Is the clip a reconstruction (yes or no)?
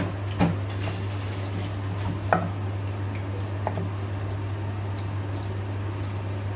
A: no